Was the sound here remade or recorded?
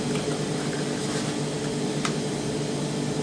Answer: recorded